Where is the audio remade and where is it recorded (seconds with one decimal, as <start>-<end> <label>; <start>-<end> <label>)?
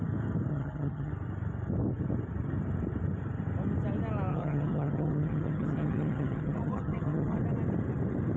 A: 0.0-0.5 recorded; 0.5-1.1 remade; 1.1-4.3 recorded; 4.3-7.4 remade; 7.4-8.4 recorded